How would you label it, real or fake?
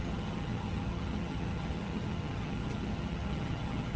fake